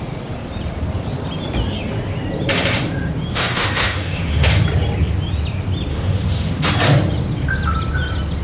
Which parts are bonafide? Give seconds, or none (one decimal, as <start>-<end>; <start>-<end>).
0.0-3.3; 4.5-5.9; 6.7-8.4